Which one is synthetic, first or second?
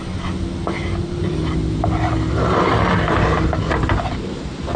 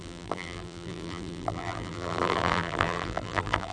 second